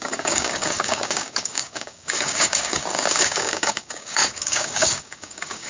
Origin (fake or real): fake